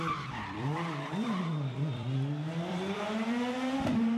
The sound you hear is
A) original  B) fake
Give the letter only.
B